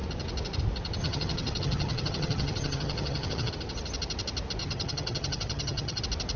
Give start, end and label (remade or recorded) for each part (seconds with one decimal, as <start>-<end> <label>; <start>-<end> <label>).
0.0-1.0 recorded; 1.0-3.5 remade; 3.5-4.6 recorded; 4.6-6.0 remade; 6.0-6.4 recorded